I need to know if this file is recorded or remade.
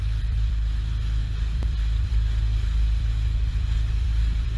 remade